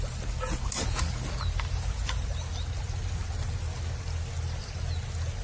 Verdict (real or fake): real